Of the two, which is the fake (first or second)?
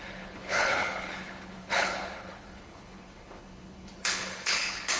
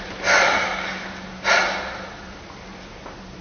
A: first